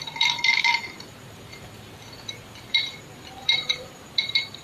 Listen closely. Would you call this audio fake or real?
fake